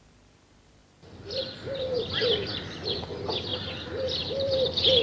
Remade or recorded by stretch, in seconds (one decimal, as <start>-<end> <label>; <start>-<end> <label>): 0.0-5.0 remade